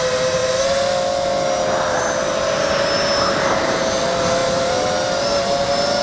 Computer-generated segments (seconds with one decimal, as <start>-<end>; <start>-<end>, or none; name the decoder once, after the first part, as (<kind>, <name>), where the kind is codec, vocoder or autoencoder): none